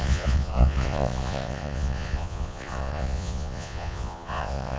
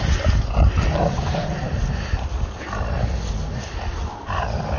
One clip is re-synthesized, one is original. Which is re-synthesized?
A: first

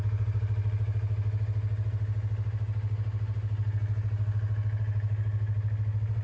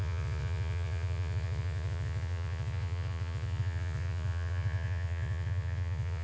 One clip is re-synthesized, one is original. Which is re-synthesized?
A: second